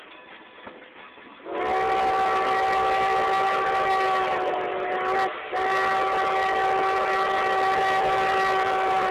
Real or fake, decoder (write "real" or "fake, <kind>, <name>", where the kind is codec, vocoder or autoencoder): real